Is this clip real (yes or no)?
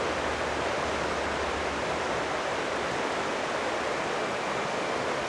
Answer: yes